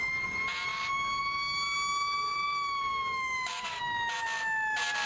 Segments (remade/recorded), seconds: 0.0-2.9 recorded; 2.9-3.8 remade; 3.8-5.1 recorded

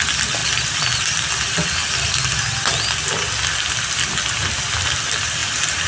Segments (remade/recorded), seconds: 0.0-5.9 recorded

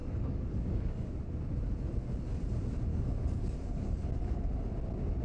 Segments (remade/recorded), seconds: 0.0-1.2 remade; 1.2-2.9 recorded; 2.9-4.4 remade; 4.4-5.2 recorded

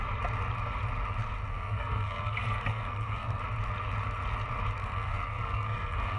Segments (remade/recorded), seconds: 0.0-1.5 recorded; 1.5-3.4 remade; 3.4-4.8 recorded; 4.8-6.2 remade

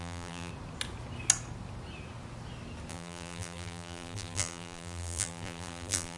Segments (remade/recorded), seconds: 0.0-0.5 remade; 0.5-2.9 recorded; 2.9-6.2 remade

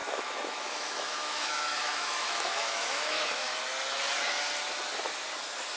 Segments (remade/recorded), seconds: 0.0-3.5 remade; 3.5-5.8 recorded

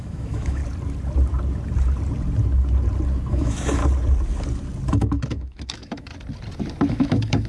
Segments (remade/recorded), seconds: 0.0-0.6 remade; 0.6-3.3 recorded; 3.3-3.8 remade; 3.8-4.9 recorded; 4.9-6.1 remade; 6.1-6.9 recorded; 6.9-7.5 remade